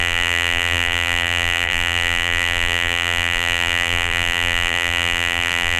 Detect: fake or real fake